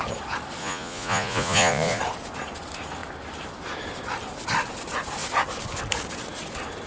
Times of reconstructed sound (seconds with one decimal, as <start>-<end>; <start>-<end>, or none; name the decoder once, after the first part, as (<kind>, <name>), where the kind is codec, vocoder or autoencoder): 0.6-2.0 (vocoder, Vocos)